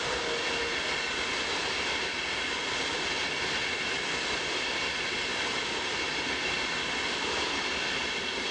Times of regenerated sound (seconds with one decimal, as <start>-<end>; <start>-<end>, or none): none